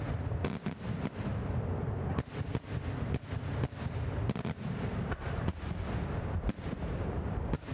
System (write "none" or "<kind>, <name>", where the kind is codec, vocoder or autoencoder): none